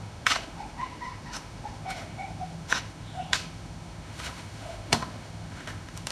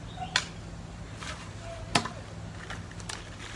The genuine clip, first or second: second